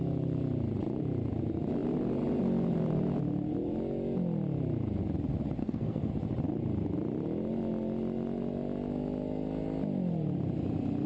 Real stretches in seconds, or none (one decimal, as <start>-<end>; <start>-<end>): 0.0-5.6; 6.1-11.1